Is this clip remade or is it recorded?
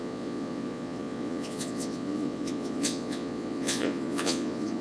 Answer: remade